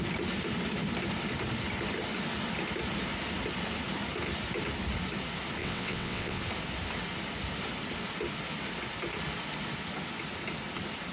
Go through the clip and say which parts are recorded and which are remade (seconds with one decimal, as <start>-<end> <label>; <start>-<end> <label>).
0.0-5.6 recorded; 5.6-6.4 remade; 6.4-11.1 recorded